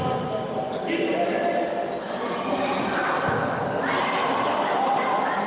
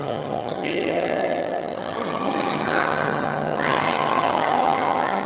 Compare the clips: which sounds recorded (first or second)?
first